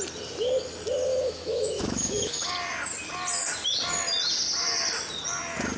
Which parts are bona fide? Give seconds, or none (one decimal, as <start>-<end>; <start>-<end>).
0.0-1.1; 2.5-5.8